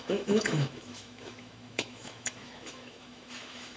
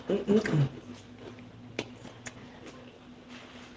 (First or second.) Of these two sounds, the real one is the second